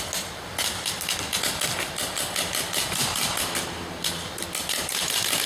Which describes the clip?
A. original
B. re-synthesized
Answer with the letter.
A